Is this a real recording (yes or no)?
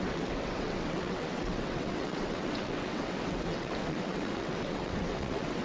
no